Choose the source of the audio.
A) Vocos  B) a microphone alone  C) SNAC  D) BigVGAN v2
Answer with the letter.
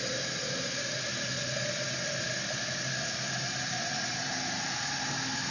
B